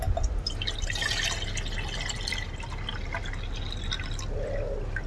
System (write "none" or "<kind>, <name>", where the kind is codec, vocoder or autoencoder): none